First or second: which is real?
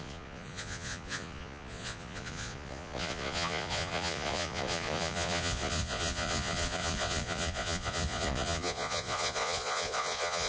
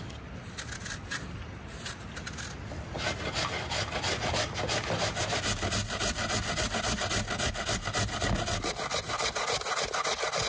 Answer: second